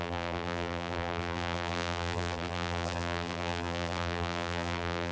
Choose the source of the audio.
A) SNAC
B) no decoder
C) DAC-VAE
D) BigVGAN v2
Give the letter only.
D